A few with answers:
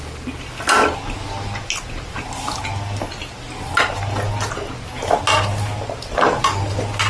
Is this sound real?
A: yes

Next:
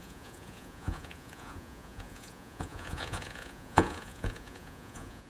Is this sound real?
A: no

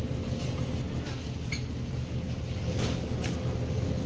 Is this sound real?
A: yes